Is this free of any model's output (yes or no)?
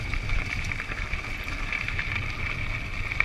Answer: yes